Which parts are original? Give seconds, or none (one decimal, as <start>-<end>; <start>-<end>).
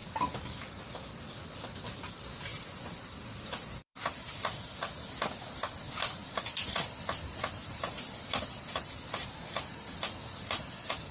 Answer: 0.8-2.5; 4.9-6.2; 10.7-11.1